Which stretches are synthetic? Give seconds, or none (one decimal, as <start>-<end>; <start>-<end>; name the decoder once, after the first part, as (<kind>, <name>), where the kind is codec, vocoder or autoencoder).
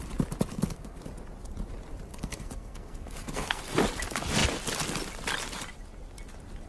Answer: 0.5-1.0 (codec, SNAC); 2.1-3.6